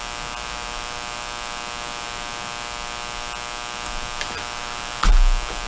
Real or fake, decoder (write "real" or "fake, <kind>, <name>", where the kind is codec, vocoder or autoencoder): real